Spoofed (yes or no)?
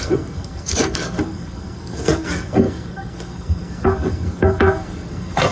yes